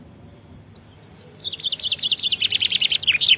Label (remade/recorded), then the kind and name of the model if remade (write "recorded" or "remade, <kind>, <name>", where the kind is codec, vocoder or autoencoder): remade, vocoder, BigVGAN v2